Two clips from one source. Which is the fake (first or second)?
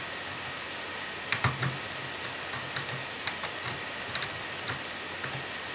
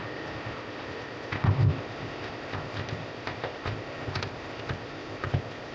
second